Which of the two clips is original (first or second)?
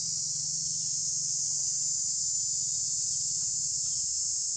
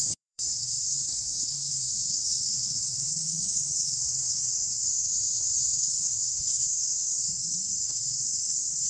first